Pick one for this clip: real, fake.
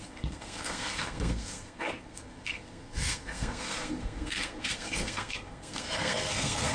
fake